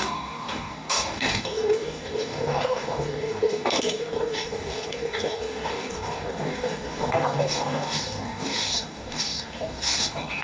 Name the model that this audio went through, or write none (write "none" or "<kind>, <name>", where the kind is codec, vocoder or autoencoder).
codec, DAC